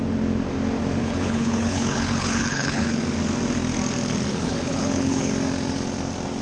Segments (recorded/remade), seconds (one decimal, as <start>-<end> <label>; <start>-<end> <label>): 0.0-1.0 recorded; 1.0-3.0 remade; 3.0-4.3 recorded; 4.3-5.3 remade; 5.3-6.4 recorded